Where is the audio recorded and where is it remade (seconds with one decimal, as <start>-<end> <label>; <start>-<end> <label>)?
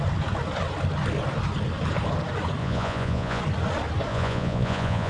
0.0-2.6 recorded; 2.6-3.4 remade; 3.4-4.1 recorded; 4.1-5.1 remade